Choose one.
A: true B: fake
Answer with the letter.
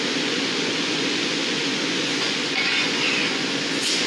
B